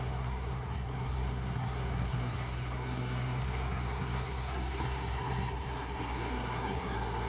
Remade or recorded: remade